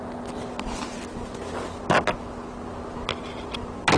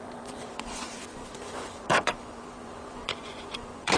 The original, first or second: first